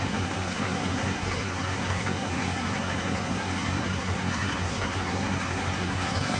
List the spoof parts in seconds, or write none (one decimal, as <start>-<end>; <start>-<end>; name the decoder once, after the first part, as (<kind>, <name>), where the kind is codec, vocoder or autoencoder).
0.0-6.4 (codec, SNAC)